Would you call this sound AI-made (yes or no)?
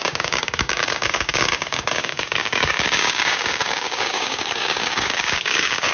yes